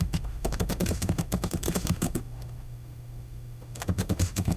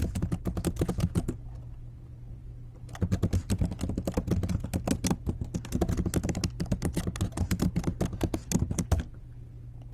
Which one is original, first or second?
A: second